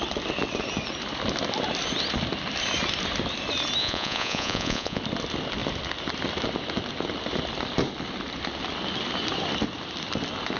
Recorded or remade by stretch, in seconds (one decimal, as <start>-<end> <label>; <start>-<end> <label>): 0.0-3.8 recorded; 3.8-5.0 remade; 5.0-10.6 recorded